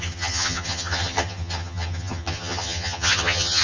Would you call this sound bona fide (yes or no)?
no